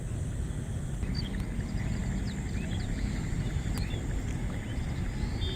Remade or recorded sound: recorded